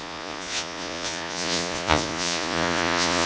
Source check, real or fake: fake